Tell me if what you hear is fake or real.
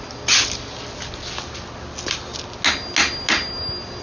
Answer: real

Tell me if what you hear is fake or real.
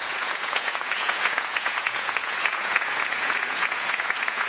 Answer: fake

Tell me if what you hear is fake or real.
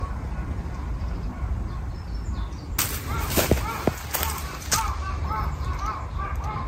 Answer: real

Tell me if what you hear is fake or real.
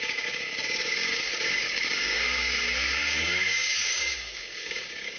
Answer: fake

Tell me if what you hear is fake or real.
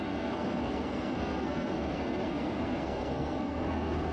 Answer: fake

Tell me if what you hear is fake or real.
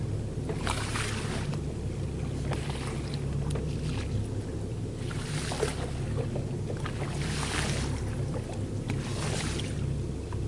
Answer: real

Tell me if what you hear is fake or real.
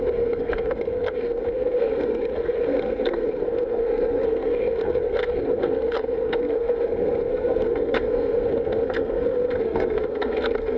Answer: fake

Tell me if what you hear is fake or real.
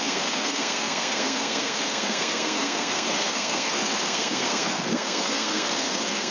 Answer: fake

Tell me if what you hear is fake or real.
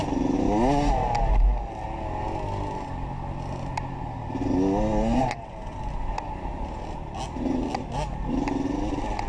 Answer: real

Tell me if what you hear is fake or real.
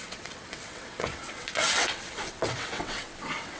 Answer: fake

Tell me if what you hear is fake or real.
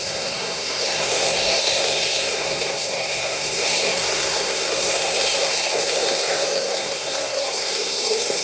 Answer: fake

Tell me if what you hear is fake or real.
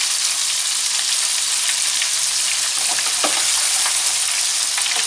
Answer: real